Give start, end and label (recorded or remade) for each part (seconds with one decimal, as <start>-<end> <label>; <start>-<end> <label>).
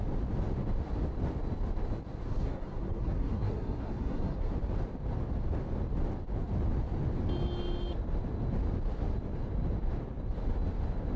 0.0-2.3 recorded; 2.3-4.5 remade; 4.5-11.2 recorded